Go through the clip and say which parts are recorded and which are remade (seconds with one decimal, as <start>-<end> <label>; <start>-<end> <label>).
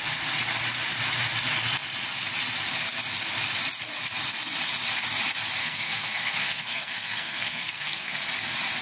0.0-5.6 recorded; 5.6-8.2 remade; 8.2-8.8 recorded